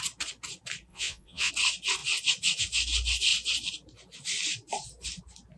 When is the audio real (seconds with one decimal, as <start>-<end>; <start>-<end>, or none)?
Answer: 0.0-0.9; 1.5-5.6